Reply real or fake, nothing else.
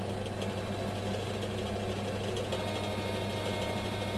real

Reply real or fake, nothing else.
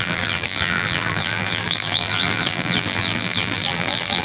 fake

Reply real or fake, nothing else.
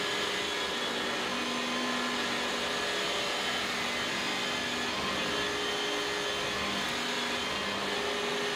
real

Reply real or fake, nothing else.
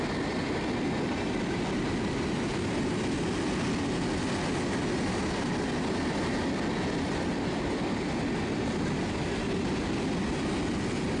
real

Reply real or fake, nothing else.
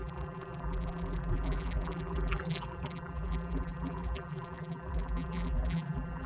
fake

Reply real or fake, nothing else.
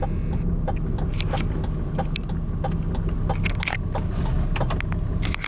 real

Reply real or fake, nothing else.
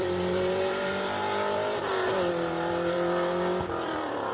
fake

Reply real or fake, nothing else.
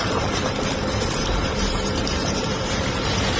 fake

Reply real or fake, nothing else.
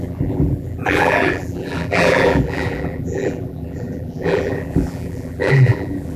fake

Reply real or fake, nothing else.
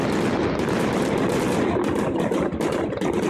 real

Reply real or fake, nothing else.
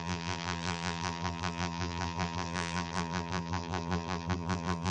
fake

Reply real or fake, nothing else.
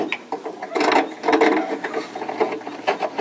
real